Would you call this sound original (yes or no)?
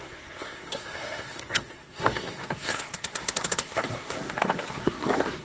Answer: no